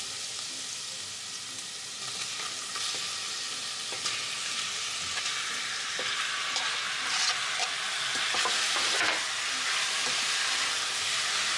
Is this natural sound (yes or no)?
yes